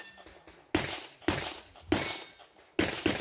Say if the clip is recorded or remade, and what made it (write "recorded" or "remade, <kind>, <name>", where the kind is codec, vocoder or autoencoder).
recorded